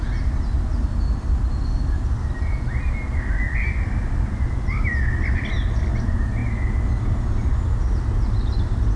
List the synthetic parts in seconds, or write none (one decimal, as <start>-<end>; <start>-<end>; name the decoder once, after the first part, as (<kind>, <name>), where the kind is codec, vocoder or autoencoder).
none